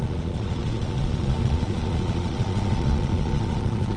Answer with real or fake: fake